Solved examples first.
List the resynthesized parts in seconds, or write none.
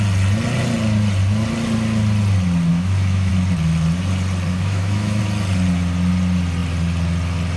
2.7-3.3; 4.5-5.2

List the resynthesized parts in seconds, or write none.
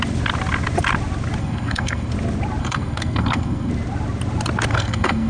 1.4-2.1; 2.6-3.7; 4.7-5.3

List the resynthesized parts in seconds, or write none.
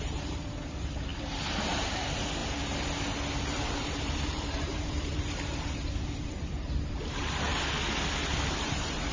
0.0-2.4; 3.4-7.5; 8.5-9.1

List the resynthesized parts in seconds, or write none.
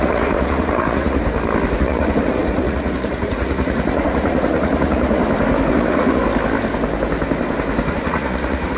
0.0-1.2; 1.8-5.2; 5.7-6.2; 7.9-8.8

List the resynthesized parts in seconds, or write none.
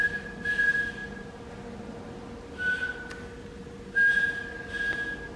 1.0-1.5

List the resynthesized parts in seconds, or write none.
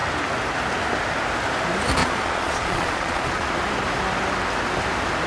2.0-3.5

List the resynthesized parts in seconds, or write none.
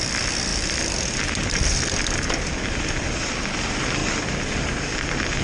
0.5-2.3; 4.0-5.4